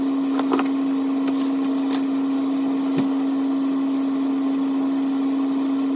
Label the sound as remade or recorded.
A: recorded